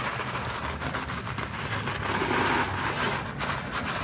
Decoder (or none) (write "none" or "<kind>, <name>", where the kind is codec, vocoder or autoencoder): none